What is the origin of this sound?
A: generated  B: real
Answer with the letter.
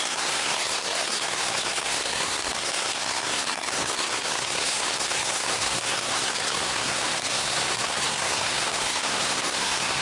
A